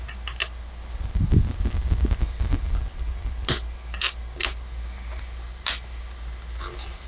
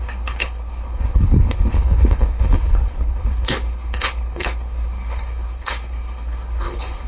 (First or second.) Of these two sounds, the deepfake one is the second